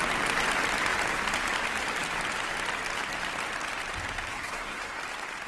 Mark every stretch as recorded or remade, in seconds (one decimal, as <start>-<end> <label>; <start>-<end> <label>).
0.0-4.3 recorded; 4.3-5.0 remade; 5.0-5.5 recorded